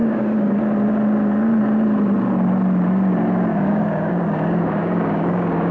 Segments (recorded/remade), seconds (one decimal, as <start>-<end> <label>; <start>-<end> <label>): 0.0-0.6 remade; 0.6-3.5 recorded; 3.5-5.7 remade